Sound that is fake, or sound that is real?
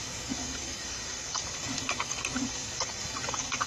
fake